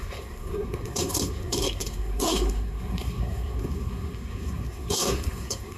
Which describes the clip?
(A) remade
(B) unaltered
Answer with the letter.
A